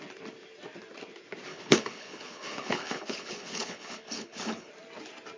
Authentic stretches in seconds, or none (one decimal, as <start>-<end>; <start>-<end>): 0.0-1.5; 4.7-5.4